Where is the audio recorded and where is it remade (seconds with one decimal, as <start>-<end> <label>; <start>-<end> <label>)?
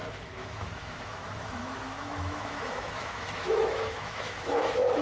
0.0-5.0 remade